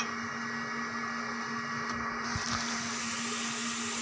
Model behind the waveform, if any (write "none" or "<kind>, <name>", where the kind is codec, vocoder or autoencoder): vocoder, BigVGAN v2